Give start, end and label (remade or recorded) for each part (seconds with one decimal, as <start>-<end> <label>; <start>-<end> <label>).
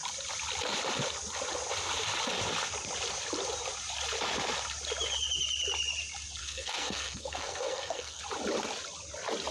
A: 0.0-6.4 recorded; 6.4-8.2 remade; 8.2-9.5 recorded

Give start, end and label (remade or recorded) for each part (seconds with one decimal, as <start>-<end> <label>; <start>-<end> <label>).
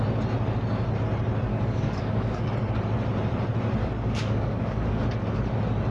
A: 0.0-1.5 recorded; 1.5-2.5 remade; 2.5-3.8 recorded; 3.8-5.0 remade; 5.0-5.9 recorded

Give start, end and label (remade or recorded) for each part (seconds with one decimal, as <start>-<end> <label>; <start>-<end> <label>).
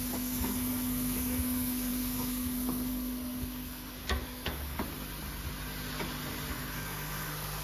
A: 0.0-4.8 remade; 4.8-6.5 recorded; 6.5-7.6 remade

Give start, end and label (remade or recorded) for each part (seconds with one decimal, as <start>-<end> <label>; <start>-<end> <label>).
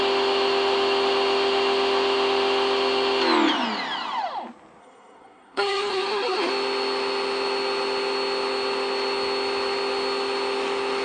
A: 0.0-4.8 recorded; 4.8-6.5 remade; 6.5-11.0 recorded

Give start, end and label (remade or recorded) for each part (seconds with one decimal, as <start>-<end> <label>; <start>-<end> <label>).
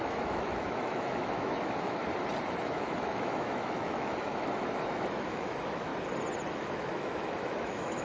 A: 0.0-2.0 remade; 2.0-2.5 recorded; 2.5-5.9 remade; 5.9-6.5 recorded; 6.5-8.0 remade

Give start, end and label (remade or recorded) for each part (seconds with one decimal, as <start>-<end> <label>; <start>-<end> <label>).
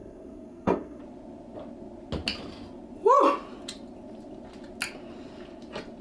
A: 0.0-1.0 remade; 1.0-6.0 recorded